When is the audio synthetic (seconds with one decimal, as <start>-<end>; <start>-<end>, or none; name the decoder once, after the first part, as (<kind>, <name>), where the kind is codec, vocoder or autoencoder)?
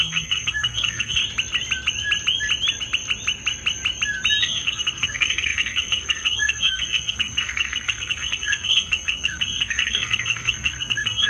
0.0-1.2 (codec, SNAC); 4.4-11.3